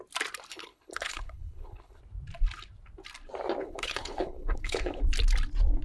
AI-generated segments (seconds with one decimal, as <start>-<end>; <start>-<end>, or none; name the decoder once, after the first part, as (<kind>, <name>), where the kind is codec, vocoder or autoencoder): 0.5-2.0 (codec, HILCodec); 3.6-5.0